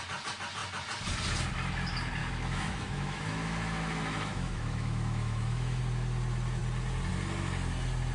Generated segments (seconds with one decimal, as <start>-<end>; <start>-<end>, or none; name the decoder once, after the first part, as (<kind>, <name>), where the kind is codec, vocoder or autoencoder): 2.2-5.8 (autoencoder, DAC-VAE)